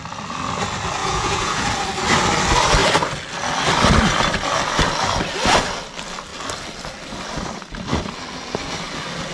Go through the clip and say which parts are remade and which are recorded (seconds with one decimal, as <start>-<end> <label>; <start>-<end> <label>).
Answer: 0.0-1.0 recorded; 1.0-1.7 remade; 1.7-9.3 recorded